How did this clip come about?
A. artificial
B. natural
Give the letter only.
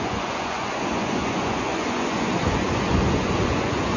A